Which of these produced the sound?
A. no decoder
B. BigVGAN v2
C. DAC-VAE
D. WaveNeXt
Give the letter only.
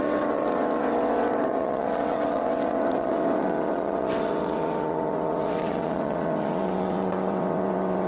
D